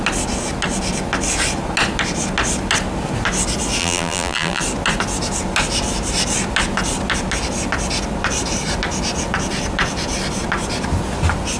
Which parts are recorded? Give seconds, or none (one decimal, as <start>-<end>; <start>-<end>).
0.0-3.8; 4.6-11.6